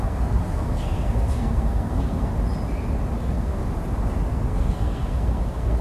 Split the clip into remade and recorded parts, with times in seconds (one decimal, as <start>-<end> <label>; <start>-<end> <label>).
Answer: 0.0-2.3 remade; 2.3-3.2 recorded; 3.2-3.6 remade; 3.6-4.3 recorded; 4.3-5.8 remade